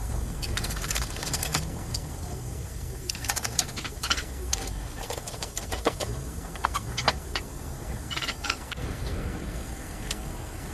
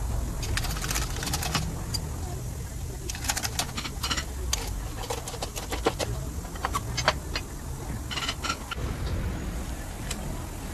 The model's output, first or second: first